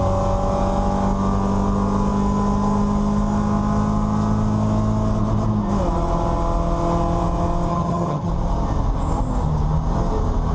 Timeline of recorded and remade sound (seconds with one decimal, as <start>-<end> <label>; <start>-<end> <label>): 0.0-7.7 recorded; 7.7-8.3 remade; 8.3-10.5 recorded